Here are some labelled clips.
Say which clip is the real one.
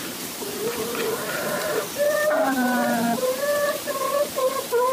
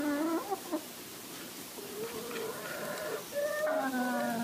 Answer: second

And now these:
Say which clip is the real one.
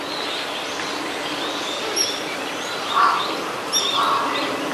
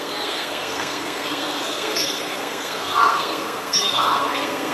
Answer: first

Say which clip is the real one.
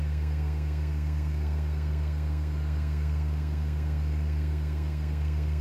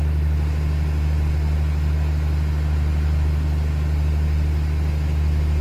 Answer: second